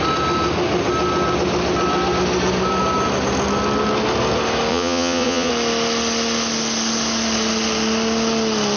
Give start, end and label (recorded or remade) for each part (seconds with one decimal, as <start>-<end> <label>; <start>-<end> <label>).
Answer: 0.0-4.7 recorded; 4.7-5.5 remade; 5.5-8.8 recorded